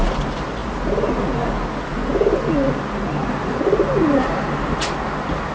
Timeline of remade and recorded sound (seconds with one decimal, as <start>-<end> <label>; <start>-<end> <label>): 0.0-1.9 recorded; 1.9-2.5 remade; 2.5-5.5 recorded